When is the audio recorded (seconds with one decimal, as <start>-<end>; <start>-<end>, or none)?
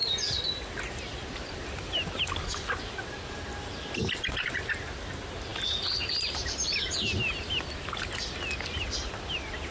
0.6-1.1; 2.2-5.5; 8.0-9.7